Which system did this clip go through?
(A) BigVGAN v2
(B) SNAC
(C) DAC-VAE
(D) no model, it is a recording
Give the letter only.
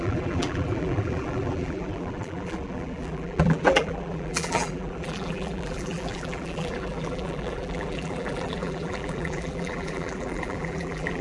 A